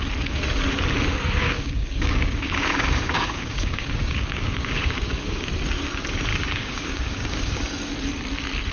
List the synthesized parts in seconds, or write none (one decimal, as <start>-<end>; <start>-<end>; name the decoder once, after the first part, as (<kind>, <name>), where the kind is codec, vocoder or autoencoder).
1.1-5.5 (codec, DAC); 6.3-7.6